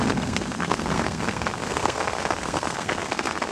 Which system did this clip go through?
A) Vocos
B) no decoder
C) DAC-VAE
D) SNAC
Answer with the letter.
D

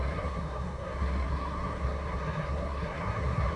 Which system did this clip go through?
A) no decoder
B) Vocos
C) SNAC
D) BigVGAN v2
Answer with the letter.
C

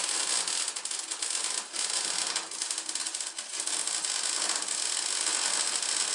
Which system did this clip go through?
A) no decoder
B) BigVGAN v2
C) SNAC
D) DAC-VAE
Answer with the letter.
A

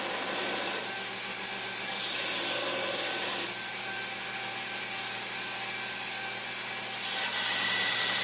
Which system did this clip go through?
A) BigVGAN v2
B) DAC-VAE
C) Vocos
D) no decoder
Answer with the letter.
D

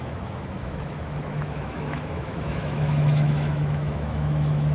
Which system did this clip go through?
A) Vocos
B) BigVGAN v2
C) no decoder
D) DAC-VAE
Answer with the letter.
D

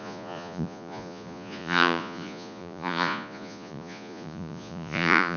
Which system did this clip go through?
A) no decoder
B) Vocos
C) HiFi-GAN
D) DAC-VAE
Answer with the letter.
B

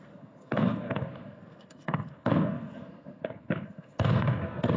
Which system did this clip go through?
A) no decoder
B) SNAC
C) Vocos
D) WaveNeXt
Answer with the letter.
B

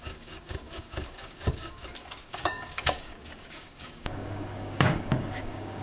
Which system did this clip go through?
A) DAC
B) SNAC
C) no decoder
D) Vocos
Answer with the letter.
A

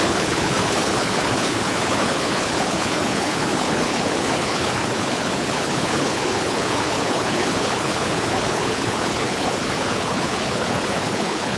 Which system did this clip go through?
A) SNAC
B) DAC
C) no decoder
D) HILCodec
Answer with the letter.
D